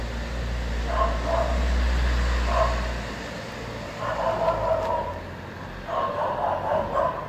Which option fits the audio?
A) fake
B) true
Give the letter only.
B